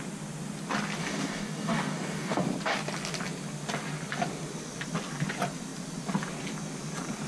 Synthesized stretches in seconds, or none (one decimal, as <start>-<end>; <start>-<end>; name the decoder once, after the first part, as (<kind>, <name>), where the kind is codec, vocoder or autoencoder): 1.0-2.4 (codec, DAC)